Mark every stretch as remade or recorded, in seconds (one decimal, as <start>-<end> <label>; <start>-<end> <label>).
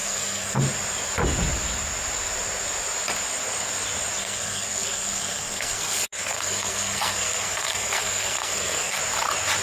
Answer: 0.0-0.6 remade; 0.6-4.2 recorded; 4.2-9.0 remade; 9.0-9.6 recorded